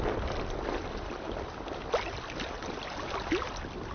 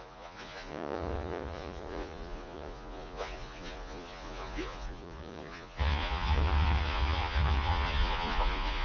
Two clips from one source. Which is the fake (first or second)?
second